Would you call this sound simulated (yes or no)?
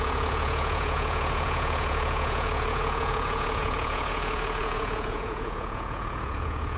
yes